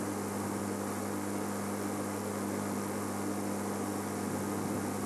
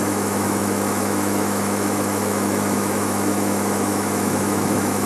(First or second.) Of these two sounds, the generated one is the second